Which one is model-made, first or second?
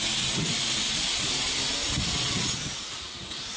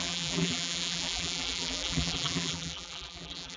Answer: second